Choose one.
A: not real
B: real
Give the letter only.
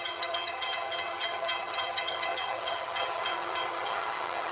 A